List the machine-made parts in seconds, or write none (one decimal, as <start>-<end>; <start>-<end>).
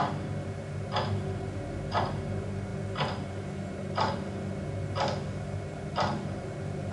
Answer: none